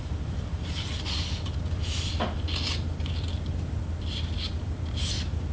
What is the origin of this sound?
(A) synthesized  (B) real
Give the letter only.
B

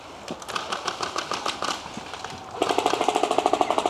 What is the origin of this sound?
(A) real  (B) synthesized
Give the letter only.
A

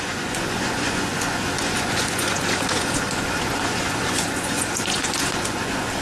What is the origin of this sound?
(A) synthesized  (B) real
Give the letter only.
A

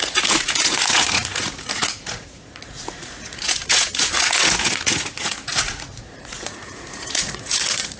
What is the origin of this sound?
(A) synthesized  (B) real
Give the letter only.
A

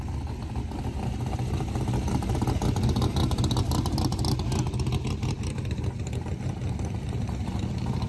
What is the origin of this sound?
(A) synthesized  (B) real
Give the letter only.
B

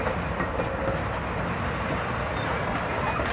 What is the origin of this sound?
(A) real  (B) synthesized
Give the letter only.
A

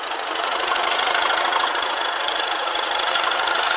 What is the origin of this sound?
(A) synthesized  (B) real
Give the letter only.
A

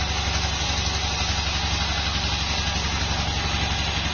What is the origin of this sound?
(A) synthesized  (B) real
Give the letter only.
B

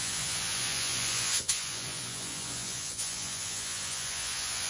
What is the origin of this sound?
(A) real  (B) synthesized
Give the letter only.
B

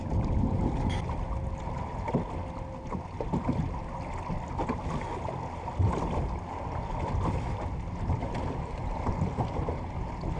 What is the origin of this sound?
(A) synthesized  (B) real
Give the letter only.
B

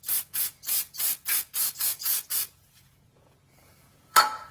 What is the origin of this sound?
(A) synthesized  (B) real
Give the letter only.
A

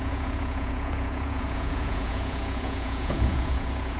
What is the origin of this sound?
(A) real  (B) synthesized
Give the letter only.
B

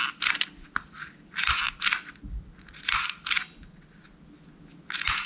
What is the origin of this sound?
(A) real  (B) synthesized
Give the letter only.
A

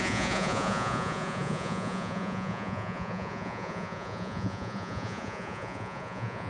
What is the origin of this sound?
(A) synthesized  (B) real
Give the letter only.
A